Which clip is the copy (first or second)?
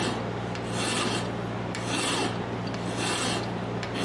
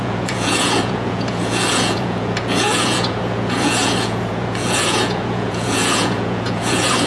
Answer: second